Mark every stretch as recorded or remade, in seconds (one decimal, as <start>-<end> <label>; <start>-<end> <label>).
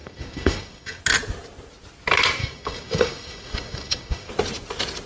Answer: 0.0-1.0 remade; 1.0-2.4 recorded; 2.4-4.3 remade; 4.3-5.1 recorded